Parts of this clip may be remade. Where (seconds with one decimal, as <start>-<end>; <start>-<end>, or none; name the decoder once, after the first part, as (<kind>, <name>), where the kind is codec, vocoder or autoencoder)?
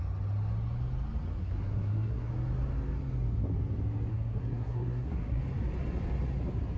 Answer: 1.4-2.3 (codec, SNAC); 4.1-5.4